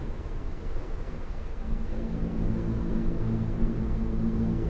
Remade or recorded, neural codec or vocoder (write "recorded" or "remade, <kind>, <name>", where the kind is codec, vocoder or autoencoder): remade, codec, SNAC